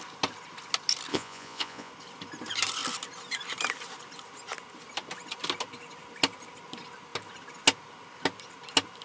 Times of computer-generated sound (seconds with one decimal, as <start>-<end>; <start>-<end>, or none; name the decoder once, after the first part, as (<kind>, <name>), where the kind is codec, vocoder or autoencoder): 1.1-1.9 (vocoder, Vocos)